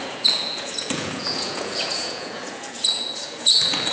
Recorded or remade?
remade